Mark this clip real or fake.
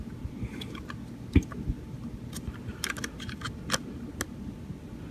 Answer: real